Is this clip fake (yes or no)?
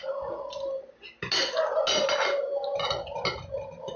no